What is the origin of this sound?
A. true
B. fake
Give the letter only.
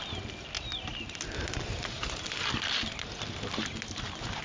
A